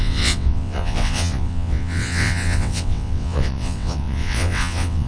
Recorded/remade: remade